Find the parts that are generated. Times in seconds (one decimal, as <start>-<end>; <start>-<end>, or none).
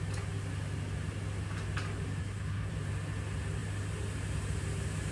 2.2-2.7